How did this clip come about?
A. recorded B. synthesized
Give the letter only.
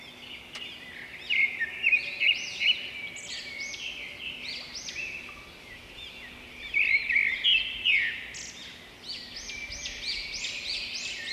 A